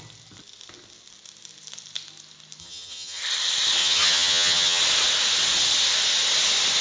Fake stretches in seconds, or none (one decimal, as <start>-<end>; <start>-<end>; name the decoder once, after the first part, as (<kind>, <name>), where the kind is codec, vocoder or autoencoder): 2.6-3.2 (vocoder, HiFi-GAN); 3.8-4.8